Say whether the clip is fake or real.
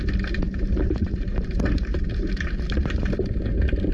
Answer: fake